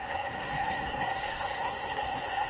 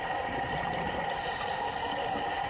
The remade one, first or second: first